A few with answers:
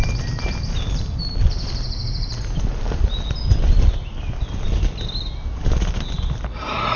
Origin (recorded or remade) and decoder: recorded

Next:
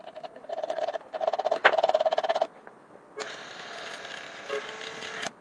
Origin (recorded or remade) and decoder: recorded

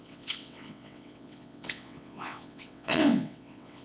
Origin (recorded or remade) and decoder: remade, vocoder, WaveNeXt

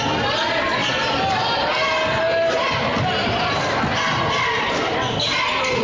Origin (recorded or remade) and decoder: recorded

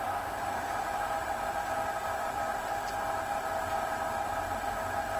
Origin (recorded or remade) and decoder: recorded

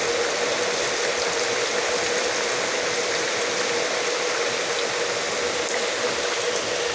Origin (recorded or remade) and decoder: recorded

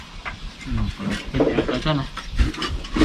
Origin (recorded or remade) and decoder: recorded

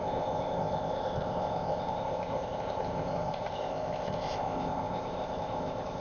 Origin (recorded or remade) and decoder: remade, codec, ZipCodec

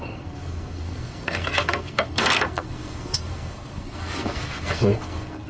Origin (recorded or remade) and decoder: remade, codec, SNAC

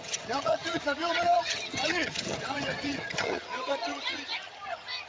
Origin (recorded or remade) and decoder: remade, vocoder, HiFi-GAN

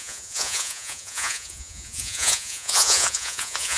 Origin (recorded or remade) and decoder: remade, vocoder, Vocos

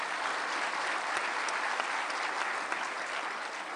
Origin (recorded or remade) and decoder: recorded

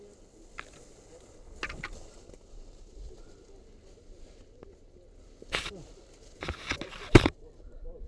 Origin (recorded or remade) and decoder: recorded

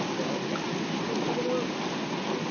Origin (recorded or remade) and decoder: recorded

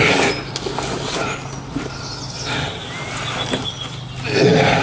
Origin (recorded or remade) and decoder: recorded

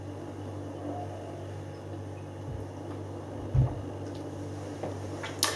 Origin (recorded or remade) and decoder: recorded